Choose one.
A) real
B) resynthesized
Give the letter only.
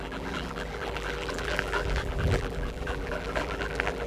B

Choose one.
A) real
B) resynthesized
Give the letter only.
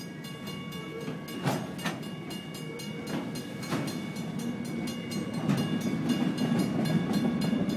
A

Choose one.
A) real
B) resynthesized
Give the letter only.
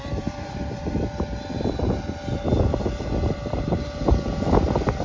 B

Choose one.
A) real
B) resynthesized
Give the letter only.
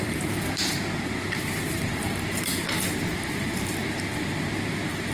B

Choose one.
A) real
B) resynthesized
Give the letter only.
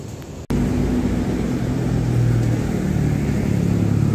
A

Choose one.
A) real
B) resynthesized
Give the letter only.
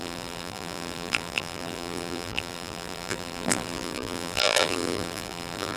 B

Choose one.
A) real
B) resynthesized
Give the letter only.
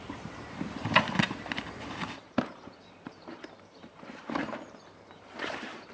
B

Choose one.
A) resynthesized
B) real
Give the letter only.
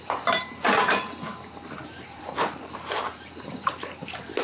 A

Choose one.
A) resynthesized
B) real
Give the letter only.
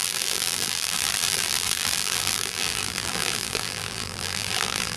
A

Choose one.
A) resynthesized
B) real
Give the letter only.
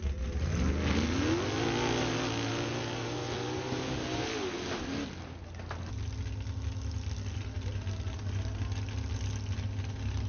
B